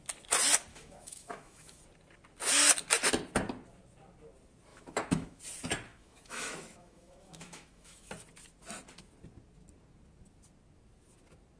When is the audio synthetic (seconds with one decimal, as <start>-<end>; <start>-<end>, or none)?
0.7-1.8; 4.7-5.4; 5.9-8.1